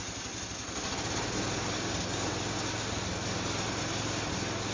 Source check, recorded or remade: recorded